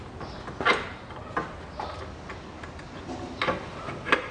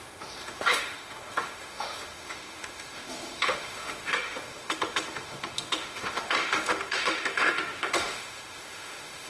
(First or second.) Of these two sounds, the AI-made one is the second